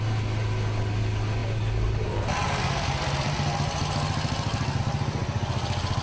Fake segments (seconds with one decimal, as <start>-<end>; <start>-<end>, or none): none